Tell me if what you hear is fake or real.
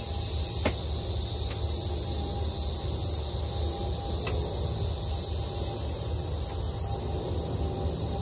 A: real